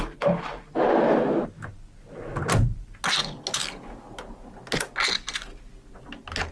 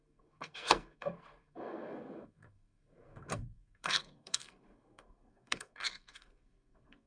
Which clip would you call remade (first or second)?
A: second